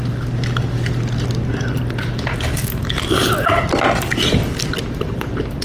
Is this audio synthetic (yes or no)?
yes